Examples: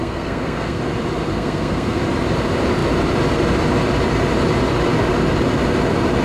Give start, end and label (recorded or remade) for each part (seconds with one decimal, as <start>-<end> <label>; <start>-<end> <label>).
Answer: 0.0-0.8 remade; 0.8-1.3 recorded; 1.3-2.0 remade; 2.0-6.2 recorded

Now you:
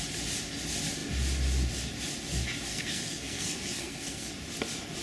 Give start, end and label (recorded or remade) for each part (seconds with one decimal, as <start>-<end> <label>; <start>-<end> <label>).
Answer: 0.0-2.7 recorded; 2.7-4.3 remade; 4.3-5.0 recorded

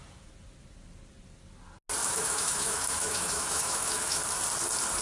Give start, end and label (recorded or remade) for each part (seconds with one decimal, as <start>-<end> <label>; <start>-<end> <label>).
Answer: 0.0-2.0 recorded; 2.0-4.2 remade; 4.2-5.0 recorded

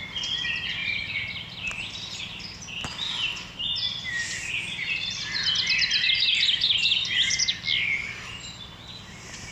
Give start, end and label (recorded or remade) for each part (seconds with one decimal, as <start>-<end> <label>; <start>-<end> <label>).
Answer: 0.0-0.8 recorded; 0.8-2.2 remade; 2.2-9.5 recorded

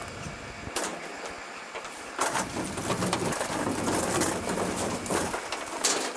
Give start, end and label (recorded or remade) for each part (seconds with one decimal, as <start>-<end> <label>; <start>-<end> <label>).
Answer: 0.0-0.9 recorded; 0.9-1.9 remade; 1.9-6.2 recorded

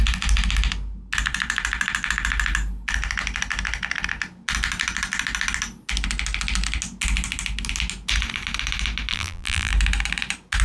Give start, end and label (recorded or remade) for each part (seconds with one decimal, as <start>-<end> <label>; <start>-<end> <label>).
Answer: 0.0-9.1 recorded; 9.1-9.7 remade; 9.7-10.6 recorded